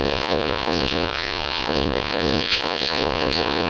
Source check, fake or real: fake